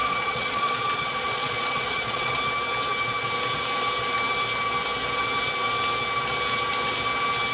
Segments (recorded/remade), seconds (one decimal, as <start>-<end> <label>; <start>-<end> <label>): 0.0-2.4 remade; 2.4-7.5 recorded